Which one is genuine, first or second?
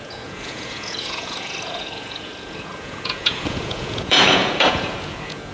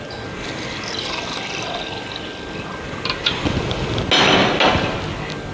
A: second